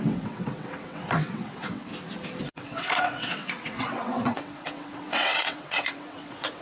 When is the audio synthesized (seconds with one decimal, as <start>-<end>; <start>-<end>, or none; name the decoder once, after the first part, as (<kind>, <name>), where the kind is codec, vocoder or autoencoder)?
0.0-1.9 (vocoder, WaveNeXt); 2.4-6.6

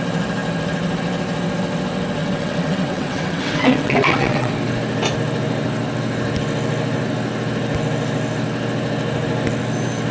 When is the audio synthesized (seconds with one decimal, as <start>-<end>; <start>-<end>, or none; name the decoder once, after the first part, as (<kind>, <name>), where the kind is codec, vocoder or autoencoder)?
2.2-4.5 (vocoder, WaveNeXt)

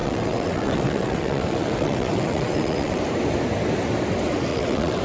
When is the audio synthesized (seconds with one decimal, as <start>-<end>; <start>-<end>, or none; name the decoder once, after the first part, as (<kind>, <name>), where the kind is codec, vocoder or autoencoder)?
0.0-3.0 (vocoder, WaveNeXt); 4.5-5.0

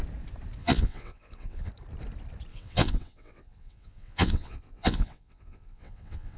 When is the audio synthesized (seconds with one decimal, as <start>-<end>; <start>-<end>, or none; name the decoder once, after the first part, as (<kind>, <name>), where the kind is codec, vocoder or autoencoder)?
0.6-1.7 (vocoder, WaveNeXt); 2.5-6.4

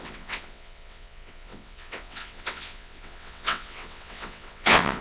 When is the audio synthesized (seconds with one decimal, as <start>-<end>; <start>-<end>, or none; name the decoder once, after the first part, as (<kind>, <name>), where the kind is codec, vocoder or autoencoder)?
0.0-5.0 (vocoder, WaveNeXt)

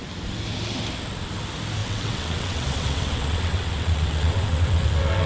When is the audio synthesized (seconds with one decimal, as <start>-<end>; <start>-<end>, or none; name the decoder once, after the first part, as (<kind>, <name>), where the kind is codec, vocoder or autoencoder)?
1.8-5.3 (vocoder, WaveNeXt)